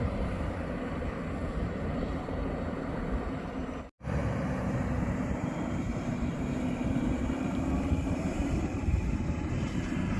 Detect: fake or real fake